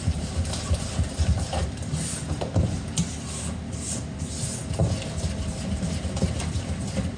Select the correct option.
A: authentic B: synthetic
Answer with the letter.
A